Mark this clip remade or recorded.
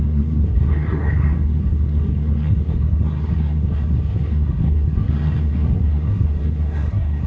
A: remade